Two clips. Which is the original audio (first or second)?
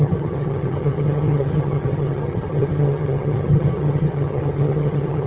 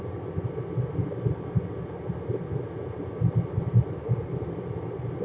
second